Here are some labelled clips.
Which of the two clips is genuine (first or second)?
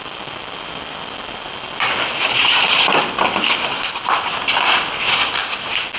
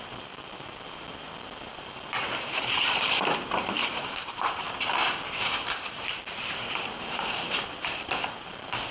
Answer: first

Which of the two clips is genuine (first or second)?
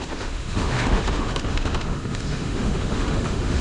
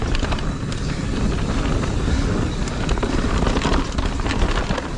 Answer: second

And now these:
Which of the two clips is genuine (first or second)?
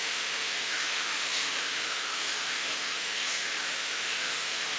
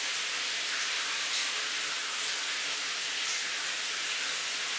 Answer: second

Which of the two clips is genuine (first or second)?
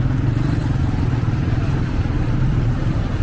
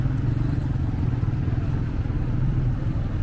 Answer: second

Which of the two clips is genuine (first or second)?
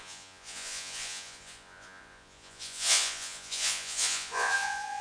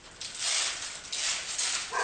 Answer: second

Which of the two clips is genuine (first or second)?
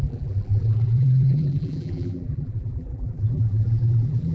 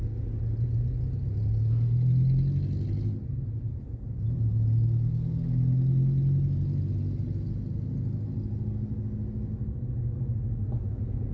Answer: second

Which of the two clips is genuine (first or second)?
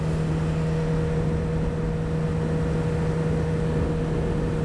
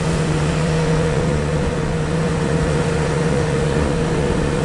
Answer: first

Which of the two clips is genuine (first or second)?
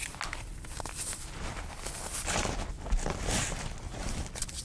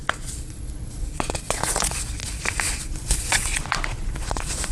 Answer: first